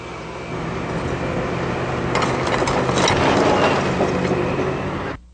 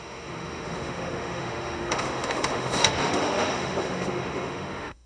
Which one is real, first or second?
first